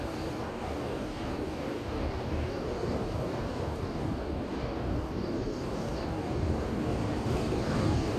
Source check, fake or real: fake